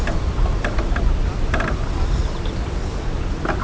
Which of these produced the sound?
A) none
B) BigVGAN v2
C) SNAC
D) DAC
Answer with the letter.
A